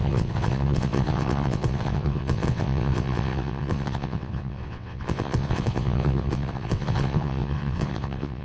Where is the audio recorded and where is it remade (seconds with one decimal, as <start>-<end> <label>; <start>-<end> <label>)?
0.0-8.4 remade